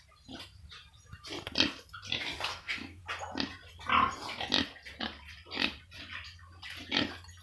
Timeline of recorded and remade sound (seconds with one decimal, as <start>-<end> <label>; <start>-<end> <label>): 0.0-2.5 recorded; 2.5-3.0 remade; 3.0-7.4 recorded

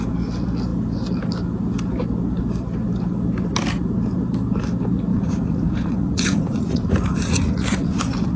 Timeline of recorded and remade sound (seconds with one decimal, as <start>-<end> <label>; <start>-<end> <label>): 0.0-5.1 recorded; 5.1-8.0 remade; 8.0-8.4 recorded

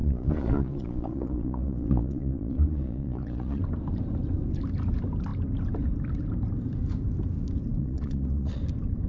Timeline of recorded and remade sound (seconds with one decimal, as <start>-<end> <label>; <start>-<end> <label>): 0.0-3.6 remade; 3.6-7.8 recorded; 7.8-8.6 remade; 8.6-9.1 recorded

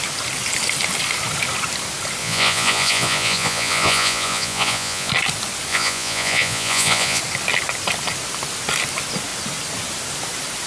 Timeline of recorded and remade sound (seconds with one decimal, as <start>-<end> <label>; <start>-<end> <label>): 0.0-2.2 recorded; 2.2-5.1 remade; 5.1-5.7 recorded; 5.7-7.2 remade; 7.2-10.7 recorded